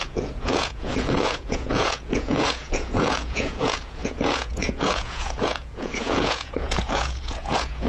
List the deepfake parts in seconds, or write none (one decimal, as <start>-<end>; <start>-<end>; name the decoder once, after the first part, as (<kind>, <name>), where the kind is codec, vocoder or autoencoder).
0.0-7.9 (vocoder, Vocos)